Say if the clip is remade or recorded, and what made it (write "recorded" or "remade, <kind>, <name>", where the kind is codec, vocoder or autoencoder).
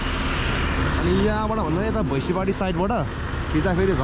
recorded